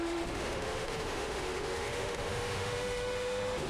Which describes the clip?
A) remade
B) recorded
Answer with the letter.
A